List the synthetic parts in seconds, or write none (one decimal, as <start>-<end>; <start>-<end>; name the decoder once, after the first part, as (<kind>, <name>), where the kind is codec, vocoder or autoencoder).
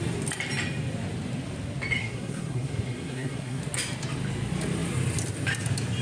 2.0-3.6 (codec, SNAC)